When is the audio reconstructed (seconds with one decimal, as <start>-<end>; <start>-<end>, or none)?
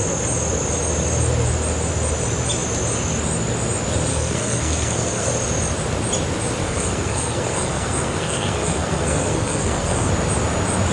4.1-5.3; 6.6-10.1